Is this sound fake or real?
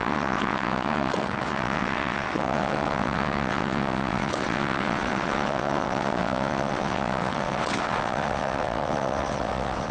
fake